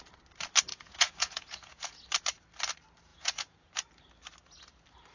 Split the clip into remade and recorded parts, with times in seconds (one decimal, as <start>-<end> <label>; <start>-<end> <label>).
0.0-0.7 recorded; 0.7-2.0 remade; 2.0-3.1 recorded; 3.1-3.7 remade; 3.7-5.1 recorded